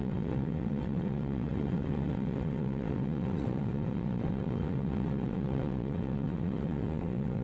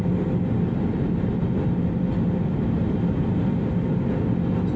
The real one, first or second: second